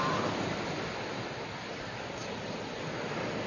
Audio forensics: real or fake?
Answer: real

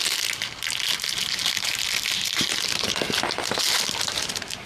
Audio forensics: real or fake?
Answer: real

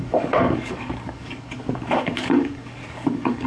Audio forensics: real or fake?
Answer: fake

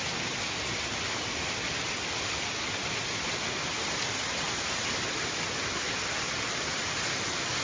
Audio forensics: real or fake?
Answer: real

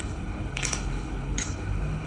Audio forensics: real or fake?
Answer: fake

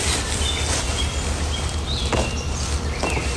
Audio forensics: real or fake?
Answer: real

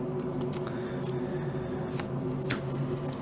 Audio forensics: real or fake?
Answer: real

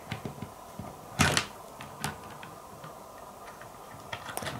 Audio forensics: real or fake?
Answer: real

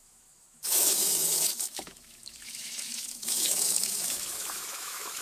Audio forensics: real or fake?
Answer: fake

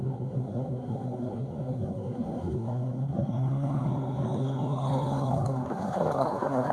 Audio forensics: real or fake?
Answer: fake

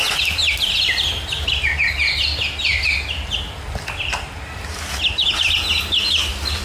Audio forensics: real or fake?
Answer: real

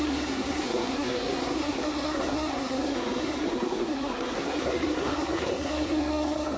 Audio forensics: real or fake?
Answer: fake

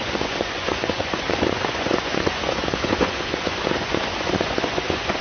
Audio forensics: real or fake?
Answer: fake